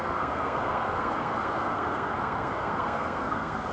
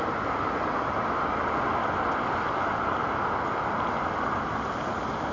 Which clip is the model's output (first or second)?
first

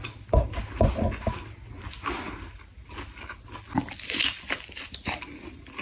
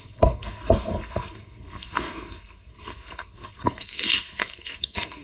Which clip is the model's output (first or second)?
second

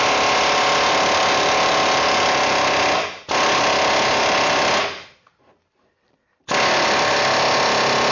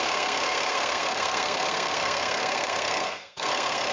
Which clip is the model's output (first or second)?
second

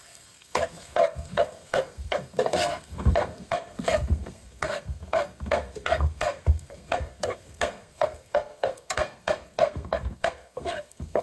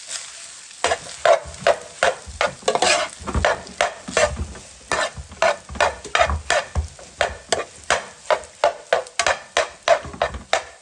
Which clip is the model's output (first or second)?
first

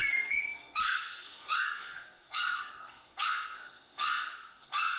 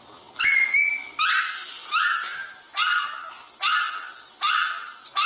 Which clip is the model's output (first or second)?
first